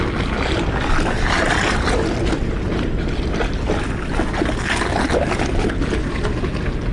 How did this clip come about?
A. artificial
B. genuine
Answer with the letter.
B